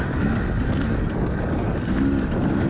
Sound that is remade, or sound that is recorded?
recorded